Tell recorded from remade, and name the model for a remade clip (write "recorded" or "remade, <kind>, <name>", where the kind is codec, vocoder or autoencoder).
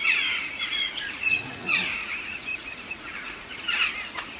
remade, vocoder, Vocos